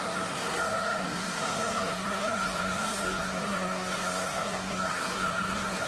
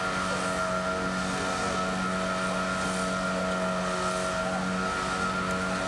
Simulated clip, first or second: first